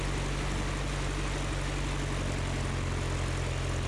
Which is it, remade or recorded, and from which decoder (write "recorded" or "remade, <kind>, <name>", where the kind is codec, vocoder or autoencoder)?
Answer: recorded